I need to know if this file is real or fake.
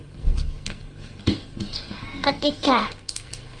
fake